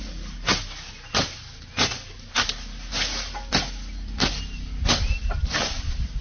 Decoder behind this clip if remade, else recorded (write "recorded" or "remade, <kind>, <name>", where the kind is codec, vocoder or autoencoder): recorded